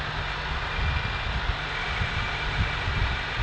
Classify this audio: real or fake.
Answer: real